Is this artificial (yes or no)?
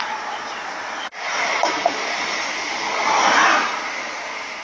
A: no